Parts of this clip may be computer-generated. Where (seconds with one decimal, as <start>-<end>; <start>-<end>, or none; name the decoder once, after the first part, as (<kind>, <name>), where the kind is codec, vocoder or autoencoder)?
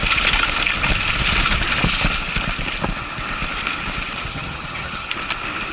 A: 4.3-5.1 (vocoder, HiFi-GAN)